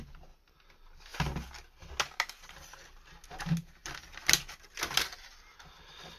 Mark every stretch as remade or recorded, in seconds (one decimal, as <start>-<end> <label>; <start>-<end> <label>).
0.0-6.2 recorded